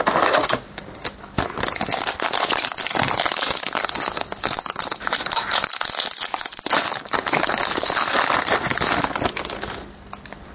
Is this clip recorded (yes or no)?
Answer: yes